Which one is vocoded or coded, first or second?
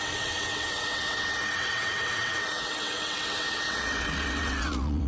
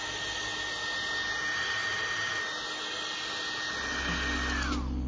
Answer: first